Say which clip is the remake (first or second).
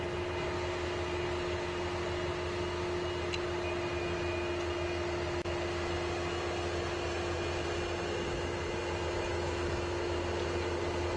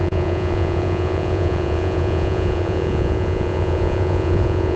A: second